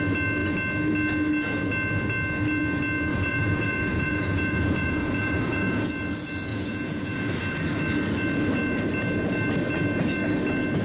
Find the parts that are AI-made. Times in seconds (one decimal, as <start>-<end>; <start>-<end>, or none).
3.1-5.9; 6.5-7.2